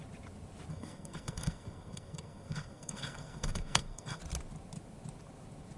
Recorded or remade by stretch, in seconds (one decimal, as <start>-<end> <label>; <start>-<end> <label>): 0.0-0.7 recorded; 0.7-4.2 remade; 4.2-5.8 recorded